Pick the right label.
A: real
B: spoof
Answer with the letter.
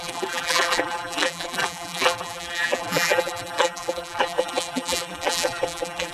B